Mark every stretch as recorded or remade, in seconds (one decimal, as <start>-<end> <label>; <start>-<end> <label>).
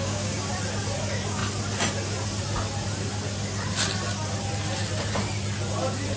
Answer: 0.0-0.5 remade; 0.5-6.2 recorded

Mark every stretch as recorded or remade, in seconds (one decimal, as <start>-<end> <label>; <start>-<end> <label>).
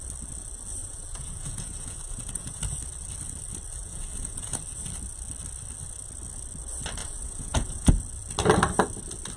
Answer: 0.0-0.8 recorded; 0.8-2.6 remade; 2.6-3.8 recorded; 3.8-4.6 remade; 4.6-7.0 recorded; 7.0-7.9 remade; 7.9-9.4 recorded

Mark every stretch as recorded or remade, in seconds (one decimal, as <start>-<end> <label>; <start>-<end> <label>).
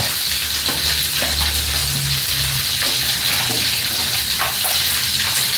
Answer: 0.0-5.6 recorded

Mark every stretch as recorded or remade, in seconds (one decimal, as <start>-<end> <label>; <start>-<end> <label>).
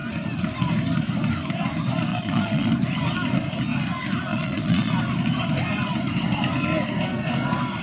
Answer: 0.0-2.1 recorded; 2.1-2.7 remade; 2.7-4.3 recorded; 4.3-4.9 remade; 4.9-7.8 recorded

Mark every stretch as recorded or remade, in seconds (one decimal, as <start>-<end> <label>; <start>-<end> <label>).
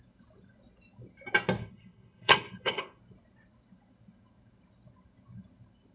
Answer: 0.0-1.6 recorded; 1.6-3.0 remade; 3.0-5.9 recorded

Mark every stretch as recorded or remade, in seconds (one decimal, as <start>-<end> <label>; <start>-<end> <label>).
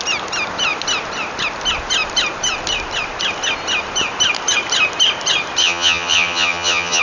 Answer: 0.0-5.6 recorded; 5.6-7.0 remade